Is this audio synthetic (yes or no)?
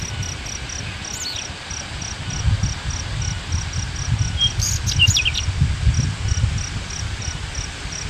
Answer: no